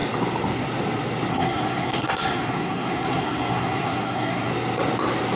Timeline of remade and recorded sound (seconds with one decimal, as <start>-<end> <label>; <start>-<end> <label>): 0.0-1.3 recorded; 1.3-4.5 remade; 4.5-5.4 recorded